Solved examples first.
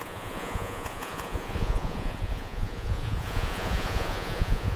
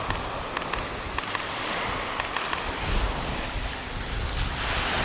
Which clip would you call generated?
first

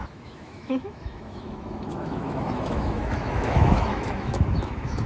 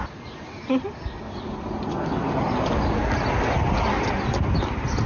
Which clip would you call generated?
first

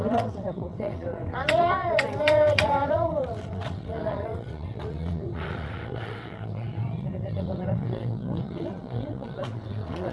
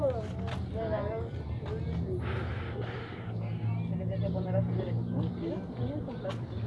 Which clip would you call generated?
first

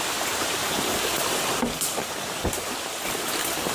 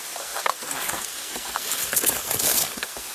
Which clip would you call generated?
second